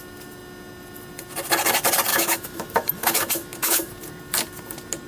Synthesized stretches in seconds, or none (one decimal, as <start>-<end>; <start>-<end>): 2.1-3.9